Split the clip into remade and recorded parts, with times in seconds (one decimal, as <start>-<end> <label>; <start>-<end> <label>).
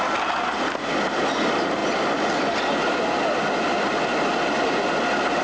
0.0-5.4 recorded